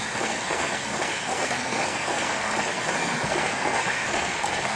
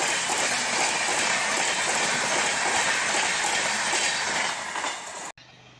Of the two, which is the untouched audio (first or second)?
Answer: second